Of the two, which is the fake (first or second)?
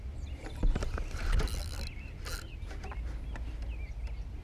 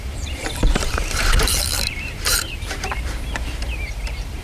second